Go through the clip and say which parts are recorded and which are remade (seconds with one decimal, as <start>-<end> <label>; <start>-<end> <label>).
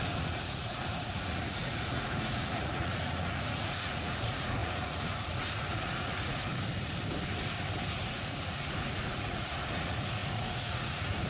0.0-6.5 remade; 6.5-7.9 recorded; 7.9-11.3 remade